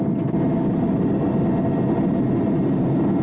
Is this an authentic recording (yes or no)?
yes